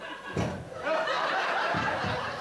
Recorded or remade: recorded